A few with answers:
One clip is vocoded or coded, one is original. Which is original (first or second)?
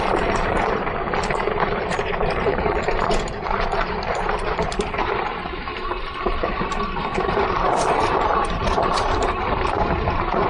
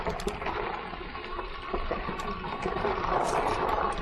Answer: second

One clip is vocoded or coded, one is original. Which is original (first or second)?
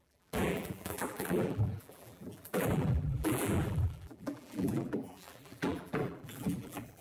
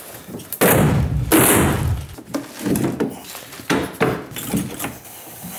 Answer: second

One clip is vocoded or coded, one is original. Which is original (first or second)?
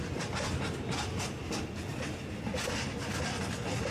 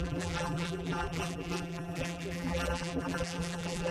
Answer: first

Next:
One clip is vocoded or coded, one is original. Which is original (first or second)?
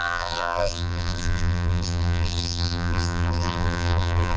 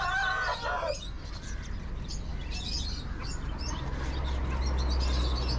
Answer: second